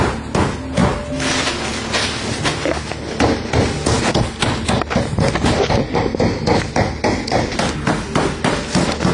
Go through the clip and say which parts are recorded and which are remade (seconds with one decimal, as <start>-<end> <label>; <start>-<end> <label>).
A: 0.0-9.1 recorded